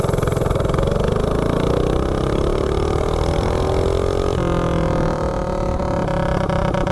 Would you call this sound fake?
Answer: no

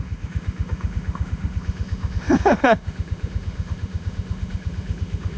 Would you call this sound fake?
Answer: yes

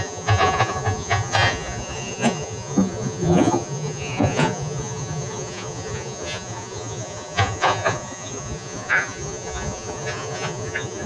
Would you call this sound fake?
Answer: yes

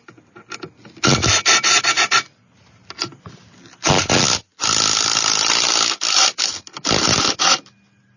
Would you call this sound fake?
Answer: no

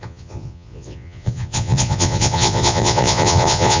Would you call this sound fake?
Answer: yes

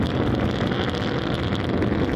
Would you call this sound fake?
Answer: no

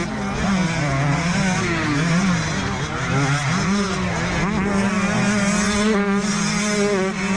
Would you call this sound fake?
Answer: no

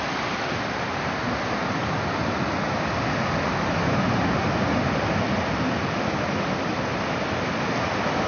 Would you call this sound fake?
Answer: no